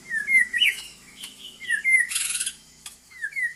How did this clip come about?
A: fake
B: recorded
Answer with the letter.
A